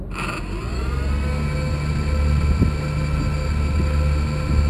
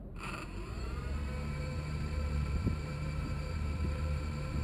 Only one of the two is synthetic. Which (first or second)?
second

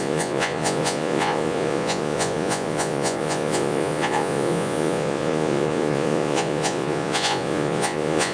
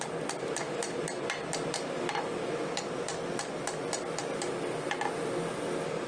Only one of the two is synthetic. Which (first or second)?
first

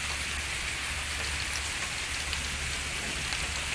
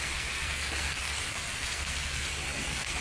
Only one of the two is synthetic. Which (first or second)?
second